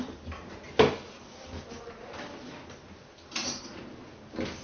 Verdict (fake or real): real